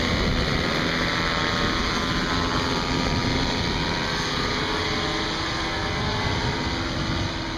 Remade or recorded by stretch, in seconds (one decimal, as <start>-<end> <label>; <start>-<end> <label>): 0.0-7.6 recorded